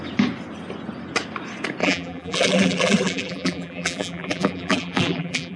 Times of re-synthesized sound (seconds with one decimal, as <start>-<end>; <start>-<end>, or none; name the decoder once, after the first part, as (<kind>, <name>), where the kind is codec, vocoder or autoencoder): 1.8-5.6 (vocoder, BigVGAN v2)